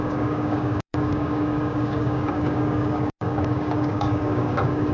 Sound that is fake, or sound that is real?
fake